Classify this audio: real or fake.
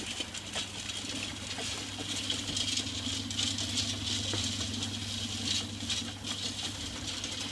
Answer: real